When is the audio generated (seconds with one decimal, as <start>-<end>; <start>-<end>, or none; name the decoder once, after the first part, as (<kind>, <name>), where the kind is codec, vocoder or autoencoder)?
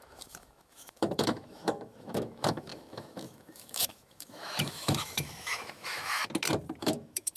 0.0-6.2 (autoencoder, DAC-VAE); 6.8-7.4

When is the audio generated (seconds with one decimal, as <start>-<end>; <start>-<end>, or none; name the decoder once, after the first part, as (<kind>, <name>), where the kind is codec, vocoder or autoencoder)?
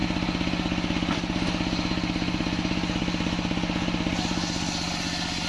none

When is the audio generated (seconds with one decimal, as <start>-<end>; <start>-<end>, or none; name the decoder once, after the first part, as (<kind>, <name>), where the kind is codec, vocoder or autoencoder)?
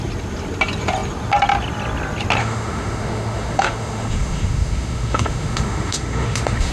2.4-6.7 (autoencoder, DAC-VAE)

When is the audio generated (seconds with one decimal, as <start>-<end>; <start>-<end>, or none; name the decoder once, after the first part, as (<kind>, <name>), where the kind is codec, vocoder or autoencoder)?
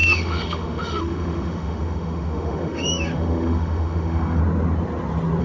0.0-4.4 (autoencoder, DAC-VAE)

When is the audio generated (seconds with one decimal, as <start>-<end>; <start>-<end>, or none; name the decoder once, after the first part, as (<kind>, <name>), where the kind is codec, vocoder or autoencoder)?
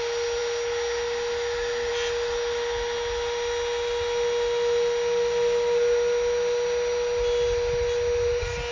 none